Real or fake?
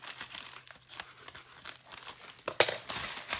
real